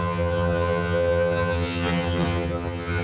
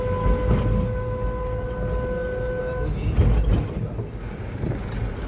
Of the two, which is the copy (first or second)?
first